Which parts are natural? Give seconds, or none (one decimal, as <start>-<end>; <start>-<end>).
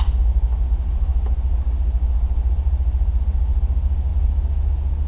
0.0-5.1